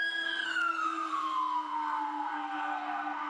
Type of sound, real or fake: fake